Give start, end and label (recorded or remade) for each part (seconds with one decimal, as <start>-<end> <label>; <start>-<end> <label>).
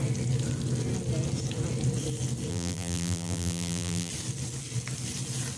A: 0.0-2.5 recorded; 2.5-4.1 remade; 4.1-5.6 recorded